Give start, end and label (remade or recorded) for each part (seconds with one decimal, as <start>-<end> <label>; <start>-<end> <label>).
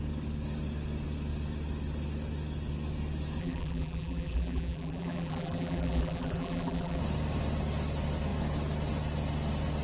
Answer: 0.0-3.4 recorded; 3.4-7.0 remade; 7.0-9.8 recorded